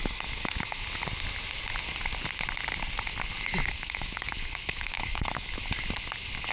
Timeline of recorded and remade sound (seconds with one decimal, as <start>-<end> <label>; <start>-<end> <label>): 0.0-0.8 remade; 0.8-3.7 recorded; 3.7-5.6 remade; 5.6-6.5 recorded